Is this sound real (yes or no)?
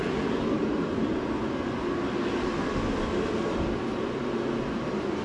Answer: yes